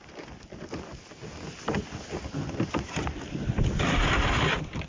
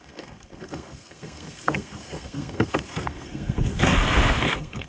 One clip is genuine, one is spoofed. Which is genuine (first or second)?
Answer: first